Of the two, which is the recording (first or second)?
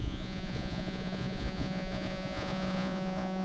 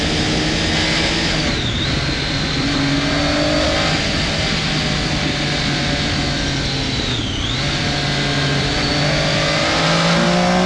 second